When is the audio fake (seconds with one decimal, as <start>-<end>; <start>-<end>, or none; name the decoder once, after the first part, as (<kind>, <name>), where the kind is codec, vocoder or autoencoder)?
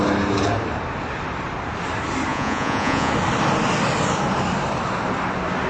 2.3-3.1 (vocoder, Vocos)